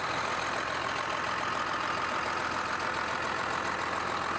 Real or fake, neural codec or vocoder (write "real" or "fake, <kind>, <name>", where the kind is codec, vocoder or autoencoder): real